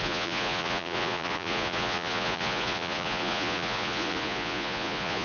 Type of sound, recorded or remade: remade